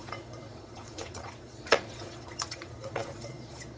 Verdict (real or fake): fake